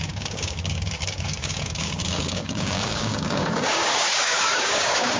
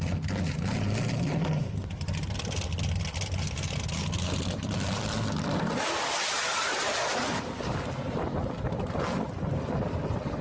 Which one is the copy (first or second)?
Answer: first